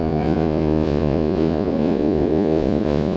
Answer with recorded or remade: remade